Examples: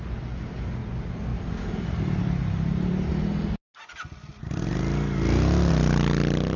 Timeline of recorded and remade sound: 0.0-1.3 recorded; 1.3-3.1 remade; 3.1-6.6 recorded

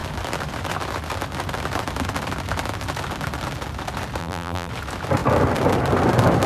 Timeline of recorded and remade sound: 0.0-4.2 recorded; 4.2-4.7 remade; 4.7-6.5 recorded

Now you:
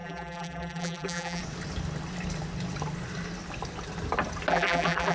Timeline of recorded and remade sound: 0.0-1.4 remade; 1.4-4.5 recorded; 4.5-5.1 remade